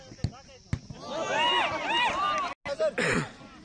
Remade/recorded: recorded